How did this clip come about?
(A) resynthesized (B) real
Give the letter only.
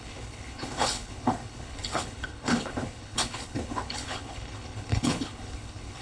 A